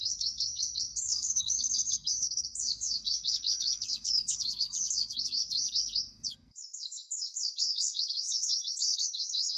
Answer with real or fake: fake